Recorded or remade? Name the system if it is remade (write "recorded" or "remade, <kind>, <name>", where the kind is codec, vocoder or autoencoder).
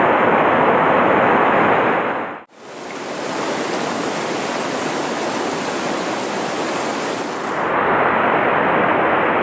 recorded